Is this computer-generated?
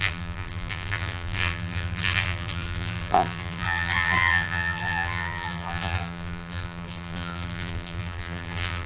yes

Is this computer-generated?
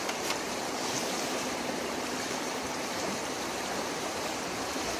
yes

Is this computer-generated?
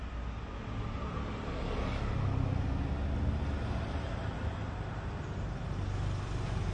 no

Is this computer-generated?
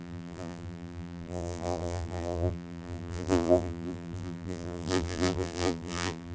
yes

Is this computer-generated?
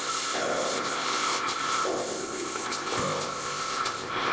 yes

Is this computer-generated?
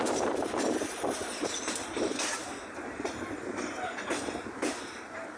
yes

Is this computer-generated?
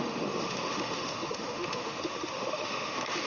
yes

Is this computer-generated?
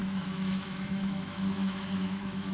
yes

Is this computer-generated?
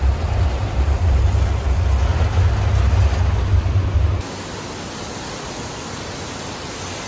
no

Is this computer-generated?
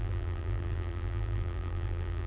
yes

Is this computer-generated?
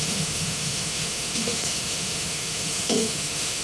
yes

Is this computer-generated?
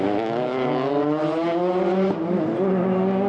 no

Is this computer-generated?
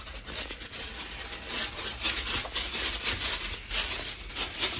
no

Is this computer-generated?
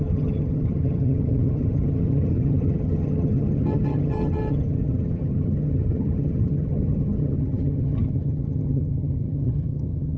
yes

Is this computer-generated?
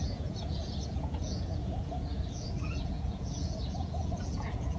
yes